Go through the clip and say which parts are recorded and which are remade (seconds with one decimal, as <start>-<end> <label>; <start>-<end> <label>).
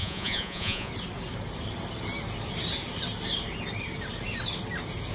0.0-0.9 remade; 0.9-5.1 recorded